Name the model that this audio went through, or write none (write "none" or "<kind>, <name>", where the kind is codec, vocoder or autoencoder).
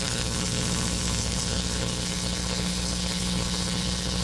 codec, HILCodec